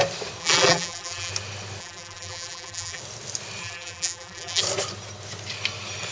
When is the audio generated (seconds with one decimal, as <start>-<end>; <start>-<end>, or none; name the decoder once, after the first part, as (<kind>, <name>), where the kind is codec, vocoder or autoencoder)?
0.4-1.3 (vocoder, BigVGAN v2); 1.8-3.0; 3.6-4.6